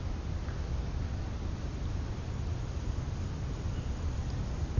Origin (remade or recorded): recorded